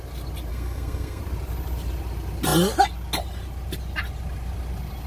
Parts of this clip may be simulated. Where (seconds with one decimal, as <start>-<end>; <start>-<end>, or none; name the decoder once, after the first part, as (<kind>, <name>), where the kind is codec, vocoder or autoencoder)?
0.5-1.2 (codec, SNAC)